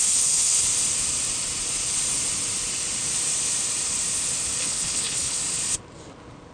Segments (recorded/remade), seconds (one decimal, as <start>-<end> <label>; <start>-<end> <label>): 0.0-0.6 remade; 0.6-4.6 recorded; 4.6-5.4 remade; 5.4-6.5 recorded